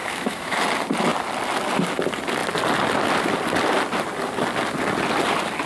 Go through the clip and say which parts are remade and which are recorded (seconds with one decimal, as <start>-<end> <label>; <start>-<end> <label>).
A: 0.0-0.6 remade; 0.6-5.7 recorded

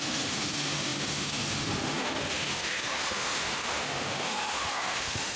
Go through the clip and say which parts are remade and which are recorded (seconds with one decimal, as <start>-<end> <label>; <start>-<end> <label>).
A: 0.0-5.4 remade

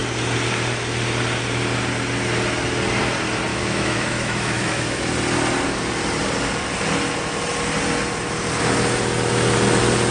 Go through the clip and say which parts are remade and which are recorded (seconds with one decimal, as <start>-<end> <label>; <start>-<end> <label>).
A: 0.0-3.5 recorded; 3.5-5.0 remade; 5.0-10.1 recorded